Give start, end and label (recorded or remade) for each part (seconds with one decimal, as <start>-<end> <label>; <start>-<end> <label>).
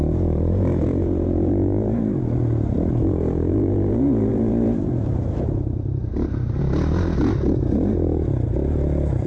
0.0-9.3 remade